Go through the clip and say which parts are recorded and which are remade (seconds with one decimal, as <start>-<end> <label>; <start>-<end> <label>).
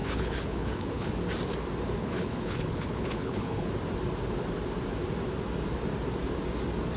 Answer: 0.0-1.1 remade; 1.1-2.0 recorded; 2.0-3.7 remade; 3.7-7.0 recorded